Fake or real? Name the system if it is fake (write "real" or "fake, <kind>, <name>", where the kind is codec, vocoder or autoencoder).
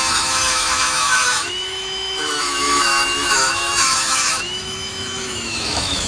fake, autoencoder, DAC-VAE